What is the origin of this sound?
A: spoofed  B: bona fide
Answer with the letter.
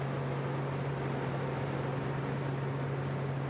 B